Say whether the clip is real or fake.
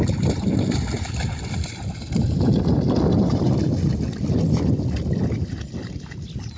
real